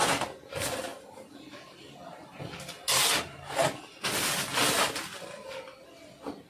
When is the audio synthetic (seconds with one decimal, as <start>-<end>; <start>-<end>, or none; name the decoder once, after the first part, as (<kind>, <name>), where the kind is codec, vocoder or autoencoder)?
none